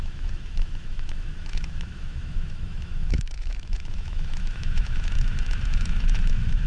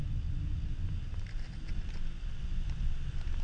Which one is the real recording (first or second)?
second